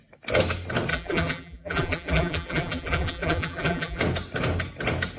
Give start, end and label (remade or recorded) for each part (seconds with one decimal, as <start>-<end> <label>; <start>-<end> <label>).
0.0-0.9 recorded; 0.9-4.0 remade; 4.0-5.2 recorded